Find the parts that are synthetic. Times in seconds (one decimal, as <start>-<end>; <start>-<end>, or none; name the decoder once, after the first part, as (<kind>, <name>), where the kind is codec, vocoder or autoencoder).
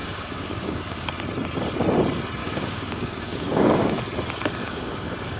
0.0-1.1 (codec, DAC); 2.4-4.0; 4.6-5.4